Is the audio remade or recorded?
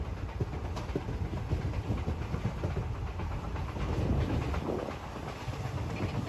recorded